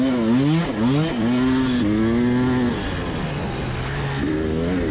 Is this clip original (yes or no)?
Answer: yes